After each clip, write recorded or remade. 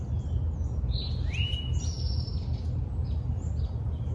recorded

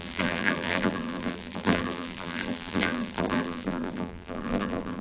remade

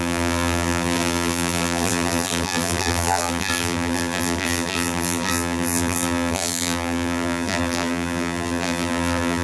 remade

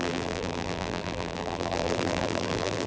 remade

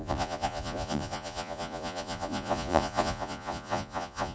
remade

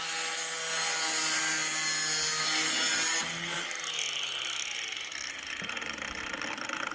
recorded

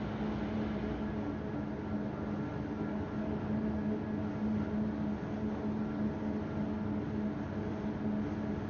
recorded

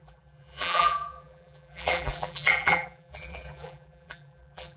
remade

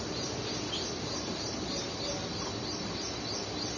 recorded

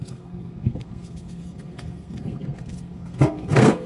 remade